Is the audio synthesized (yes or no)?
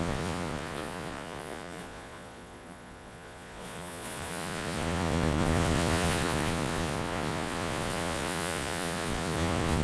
yes